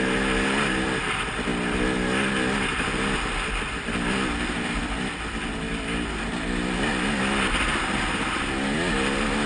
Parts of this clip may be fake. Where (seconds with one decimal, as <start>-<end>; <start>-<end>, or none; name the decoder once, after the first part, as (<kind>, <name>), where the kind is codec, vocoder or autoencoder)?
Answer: none